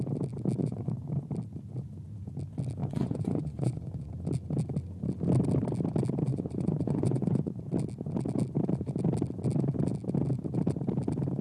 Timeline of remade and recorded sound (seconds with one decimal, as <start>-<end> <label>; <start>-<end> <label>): 0.0-0.6 recorded; 0.6-1.1 remade; 1.1-2.8 recorded; 2.8-4.1 remade; 4.1-6.3 recorded; 6.3-7.6 remade; 7.6-11.4 recorded